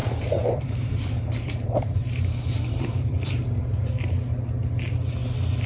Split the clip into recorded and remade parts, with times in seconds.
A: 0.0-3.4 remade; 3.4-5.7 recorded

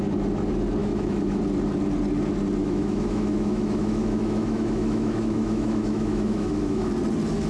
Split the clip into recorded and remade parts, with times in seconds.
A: 0.0-0.8 recorded; 0.8-1.4 remade; 1.4-2.6 recorded; 2.6-6.9 remade; 6.9-7.5 recorded

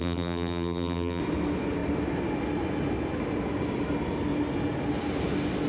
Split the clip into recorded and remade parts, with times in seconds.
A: 0.0-1.2 remade; 1.2-5.7 recorded